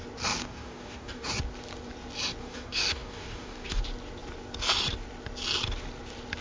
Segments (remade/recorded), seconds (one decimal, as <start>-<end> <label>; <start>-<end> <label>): 0.0-0.4 recorded; 0.4-1.3 remade; 1.3-2.4 recorded; 2.4-3.8 remade; 3.8-6.4 recorded